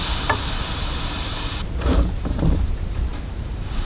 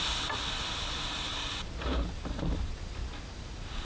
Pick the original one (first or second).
second